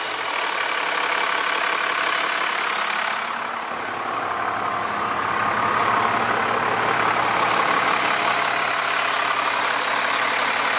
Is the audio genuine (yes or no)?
yes